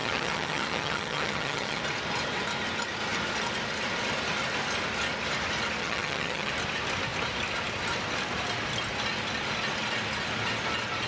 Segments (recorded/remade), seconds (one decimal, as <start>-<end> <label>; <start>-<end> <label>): 0.0-1.8 remade; 1.8-5.8 recorded; 5.8-6.5 remade; 6.5-11.1 recorded